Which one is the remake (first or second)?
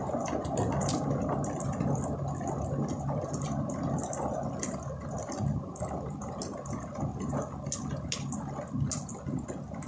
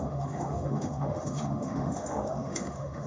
second